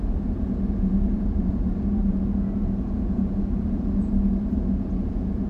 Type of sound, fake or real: fake